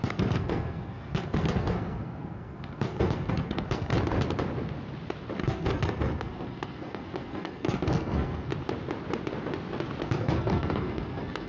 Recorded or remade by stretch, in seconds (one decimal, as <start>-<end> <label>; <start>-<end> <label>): 0.0-3.9 remade; 3.9-5.4 recorded; 5.4-8.5 remade; 8.5-10.0 recorded; 10.0-11.5 remade